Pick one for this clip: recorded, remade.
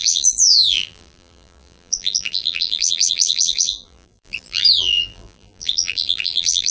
remade